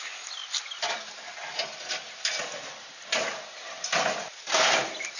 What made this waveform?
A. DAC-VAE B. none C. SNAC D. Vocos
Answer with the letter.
B